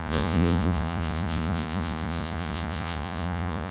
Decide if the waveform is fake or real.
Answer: fake